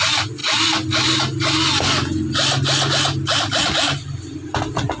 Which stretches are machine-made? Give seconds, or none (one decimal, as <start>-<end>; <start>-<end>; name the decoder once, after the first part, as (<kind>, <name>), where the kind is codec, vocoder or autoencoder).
none